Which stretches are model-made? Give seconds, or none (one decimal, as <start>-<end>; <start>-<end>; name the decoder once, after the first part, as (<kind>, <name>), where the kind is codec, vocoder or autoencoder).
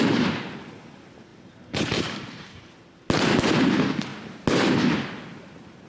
1.3-2.6 (vocoder, BigVGAN v2)